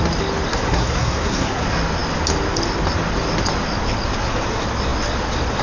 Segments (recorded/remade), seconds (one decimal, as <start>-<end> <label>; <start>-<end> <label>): 0.0-0.5 recorded; 0.5-1.6 remade; 1.6-5.6 recorded